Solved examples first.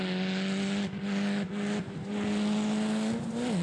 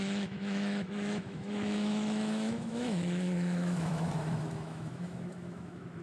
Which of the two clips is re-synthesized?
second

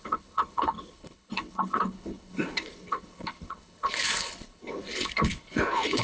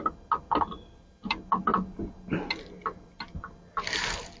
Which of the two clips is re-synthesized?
first